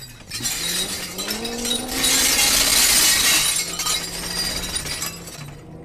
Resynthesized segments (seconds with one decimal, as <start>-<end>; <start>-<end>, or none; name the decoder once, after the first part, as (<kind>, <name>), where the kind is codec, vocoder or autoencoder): none